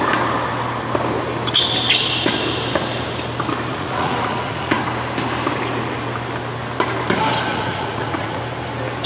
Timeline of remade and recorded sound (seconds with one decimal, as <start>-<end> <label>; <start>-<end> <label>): 0.0-3.7 recorded; 3.7-4.8 remade; 4.8-7.5 recorded; 7.5-8.4 remade; 8.4-9.1 recorded